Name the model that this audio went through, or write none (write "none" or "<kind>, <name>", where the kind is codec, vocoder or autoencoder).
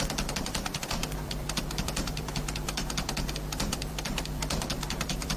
vocoder, BigVGAN v2